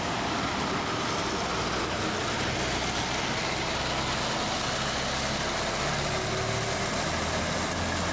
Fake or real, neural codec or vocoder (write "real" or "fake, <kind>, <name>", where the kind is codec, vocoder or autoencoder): real